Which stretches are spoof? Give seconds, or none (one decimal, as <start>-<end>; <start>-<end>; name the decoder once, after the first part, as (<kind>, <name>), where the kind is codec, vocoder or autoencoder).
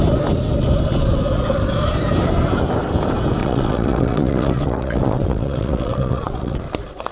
3.4-6.6 (vocoder, WaveNeXt)